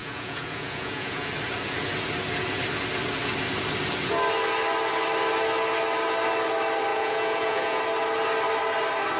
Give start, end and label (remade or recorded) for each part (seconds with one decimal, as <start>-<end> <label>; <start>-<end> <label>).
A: 0.0-1.3 remade; 1.3-6.9 recorded; 6.9-7.8 remade; 7.8-9.2 recorded